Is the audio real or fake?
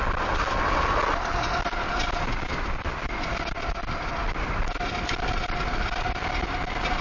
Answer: real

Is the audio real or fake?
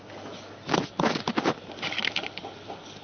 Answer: real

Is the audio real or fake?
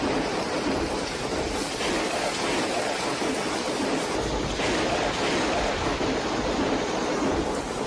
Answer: real